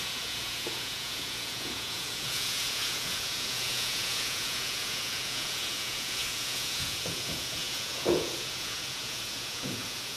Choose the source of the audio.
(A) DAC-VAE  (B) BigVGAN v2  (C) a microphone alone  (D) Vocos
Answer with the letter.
D